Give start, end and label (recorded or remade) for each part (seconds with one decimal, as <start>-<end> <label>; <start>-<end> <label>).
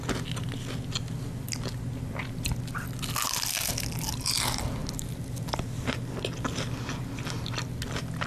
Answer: 0.0-8.3 recorded